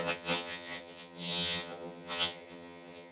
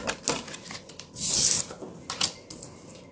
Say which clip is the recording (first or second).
second